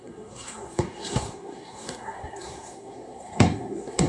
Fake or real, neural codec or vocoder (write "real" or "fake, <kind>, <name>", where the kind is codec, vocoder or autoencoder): fake, codec, SNAC